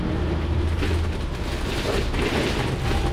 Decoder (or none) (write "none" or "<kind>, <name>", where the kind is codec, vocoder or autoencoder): none